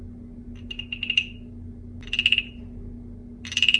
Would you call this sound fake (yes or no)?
no